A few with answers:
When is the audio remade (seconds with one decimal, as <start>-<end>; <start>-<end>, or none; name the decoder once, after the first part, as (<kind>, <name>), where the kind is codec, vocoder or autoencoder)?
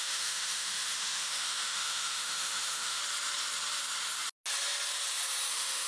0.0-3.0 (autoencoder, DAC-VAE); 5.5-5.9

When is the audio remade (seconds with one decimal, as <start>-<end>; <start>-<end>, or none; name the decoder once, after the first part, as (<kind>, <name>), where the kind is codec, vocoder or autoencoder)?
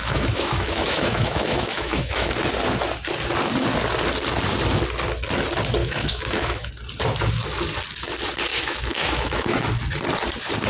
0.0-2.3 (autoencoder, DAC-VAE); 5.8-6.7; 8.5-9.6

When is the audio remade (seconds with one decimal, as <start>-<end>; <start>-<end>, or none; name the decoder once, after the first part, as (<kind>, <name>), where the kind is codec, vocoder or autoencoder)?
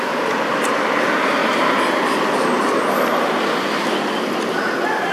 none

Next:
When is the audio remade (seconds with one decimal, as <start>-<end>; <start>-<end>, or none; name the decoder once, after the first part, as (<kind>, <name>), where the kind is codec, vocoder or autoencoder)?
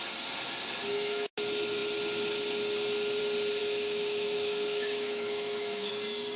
0.8-1.3 (autoencoder, DAC-VAE); 3.6-5.9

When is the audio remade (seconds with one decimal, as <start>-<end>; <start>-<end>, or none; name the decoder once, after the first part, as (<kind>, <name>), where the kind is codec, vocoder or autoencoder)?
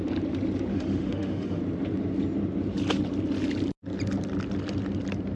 0.7-1.6 (autoencoder, DAC-VAE)